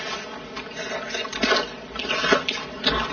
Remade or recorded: recorded